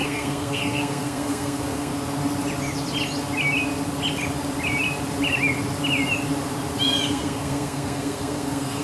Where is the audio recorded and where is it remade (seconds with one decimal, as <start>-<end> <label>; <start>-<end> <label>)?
0.0-1.9 remade; 1.9-7.1 recorded; 7.1-8.8 remade